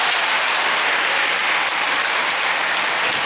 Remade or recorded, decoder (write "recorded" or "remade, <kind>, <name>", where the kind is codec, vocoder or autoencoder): recorded